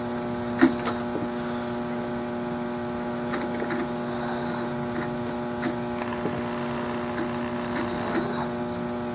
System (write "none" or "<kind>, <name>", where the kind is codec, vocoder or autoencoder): none